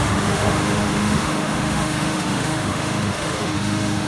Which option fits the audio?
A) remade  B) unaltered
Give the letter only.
A